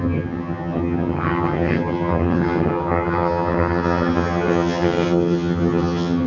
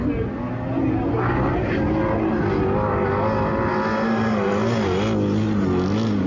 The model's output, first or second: first